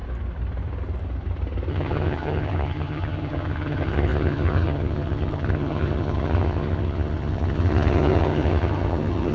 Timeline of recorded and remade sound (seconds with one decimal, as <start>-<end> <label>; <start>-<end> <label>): 0.0-1.7 recorded; 1.7-9.3 remade